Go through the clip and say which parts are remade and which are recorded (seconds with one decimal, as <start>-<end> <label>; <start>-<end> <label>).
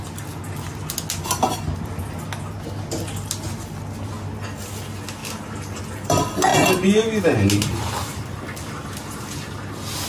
0.0-10.1 recorded